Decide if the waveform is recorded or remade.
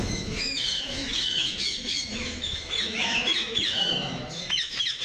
remade